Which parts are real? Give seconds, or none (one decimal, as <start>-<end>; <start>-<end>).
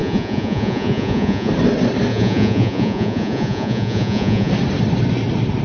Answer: 1.5-2.1; 4.5-5.6